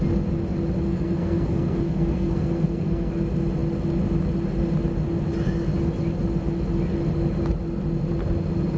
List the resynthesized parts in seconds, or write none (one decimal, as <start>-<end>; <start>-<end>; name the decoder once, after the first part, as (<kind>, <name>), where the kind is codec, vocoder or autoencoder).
0.9-3.1 (codec, SNAC)